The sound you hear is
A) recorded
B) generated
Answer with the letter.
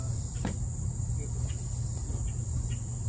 A